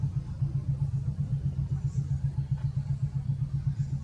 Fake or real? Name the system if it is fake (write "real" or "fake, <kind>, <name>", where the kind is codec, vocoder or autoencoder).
real